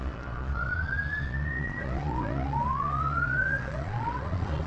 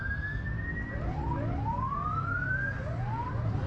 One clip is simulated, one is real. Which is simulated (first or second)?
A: first